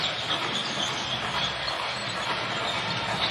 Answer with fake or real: real